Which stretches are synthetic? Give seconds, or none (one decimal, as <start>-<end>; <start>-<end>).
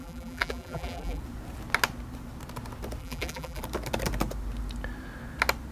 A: 0.0-1.2; 3.0-3.6